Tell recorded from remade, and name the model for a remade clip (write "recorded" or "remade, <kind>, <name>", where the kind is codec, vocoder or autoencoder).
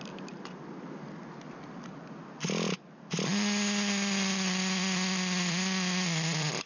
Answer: recorded